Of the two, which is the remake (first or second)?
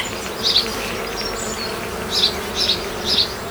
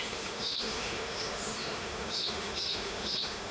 second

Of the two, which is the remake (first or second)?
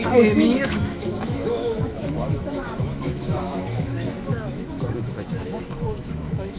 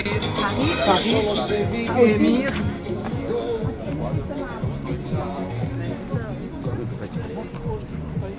first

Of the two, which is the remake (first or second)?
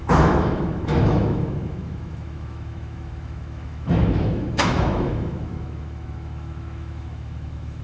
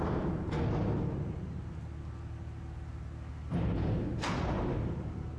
first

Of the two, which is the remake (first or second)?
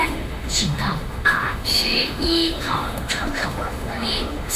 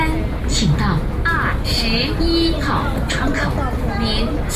first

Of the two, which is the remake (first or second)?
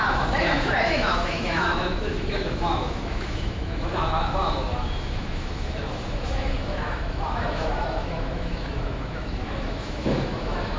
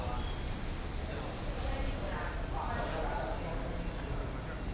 first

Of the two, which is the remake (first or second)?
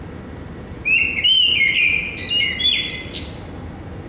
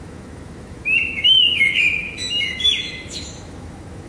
second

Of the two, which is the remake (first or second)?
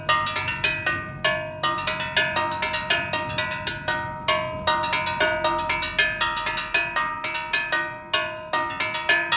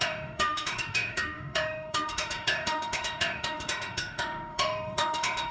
second